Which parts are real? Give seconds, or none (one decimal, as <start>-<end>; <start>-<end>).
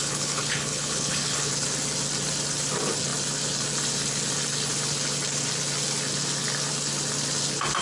1.5-7.8